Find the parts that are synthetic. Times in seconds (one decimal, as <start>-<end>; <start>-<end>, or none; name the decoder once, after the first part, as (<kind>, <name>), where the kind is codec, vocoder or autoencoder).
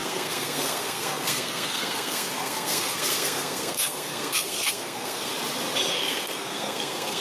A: 0.0-5.3 (codec, SNAC); 5.9-7.2